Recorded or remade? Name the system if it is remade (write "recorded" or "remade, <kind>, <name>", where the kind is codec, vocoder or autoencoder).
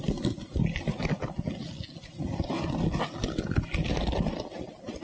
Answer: recorded